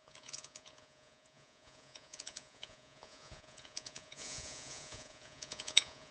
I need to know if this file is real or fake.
fake